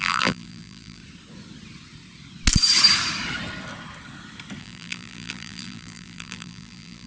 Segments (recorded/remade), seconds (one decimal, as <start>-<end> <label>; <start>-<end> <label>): 0.0-1.0 remade; 1.0-4.6 recorded; 4.6-7.1 remade